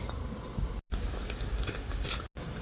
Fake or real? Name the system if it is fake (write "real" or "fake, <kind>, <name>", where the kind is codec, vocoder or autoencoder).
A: real